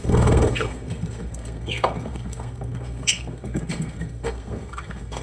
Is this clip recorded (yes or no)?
no